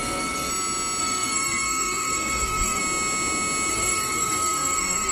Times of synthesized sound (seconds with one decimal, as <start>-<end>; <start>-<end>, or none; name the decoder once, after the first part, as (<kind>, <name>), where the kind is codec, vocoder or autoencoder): 0.0-0.5 (codec, SNAC); 1.0-2.8; 3.7-5.1